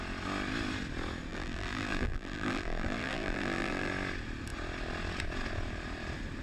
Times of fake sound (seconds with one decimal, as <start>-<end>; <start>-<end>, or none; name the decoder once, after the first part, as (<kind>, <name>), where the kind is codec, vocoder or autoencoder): 1.3-3.9 (vocoder, BigVGAN v2)

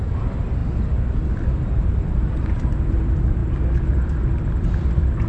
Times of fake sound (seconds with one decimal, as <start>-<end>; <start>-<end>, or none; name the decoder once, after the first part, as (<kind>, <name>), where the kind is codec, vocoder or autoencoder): 0.0-0.6 (vocoder, BigVGAN v2); 2.3-5.3

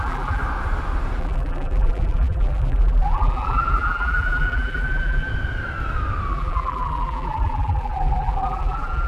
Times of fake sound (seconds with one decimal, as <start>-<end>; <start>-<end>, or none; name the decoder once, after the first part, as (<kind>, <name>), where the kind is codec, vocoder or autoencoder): 0.0-0.4 (vocoder, BigVGAN v2); 1.2-5.3; 6.3-9.1